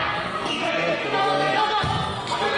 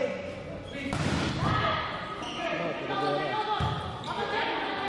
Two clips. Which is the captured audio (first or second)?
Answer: second